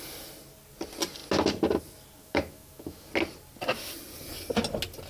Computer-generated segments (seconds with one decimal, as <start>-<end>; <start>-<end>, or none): 2.2-3.1